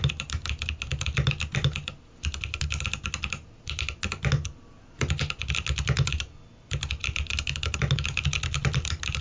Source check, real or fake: real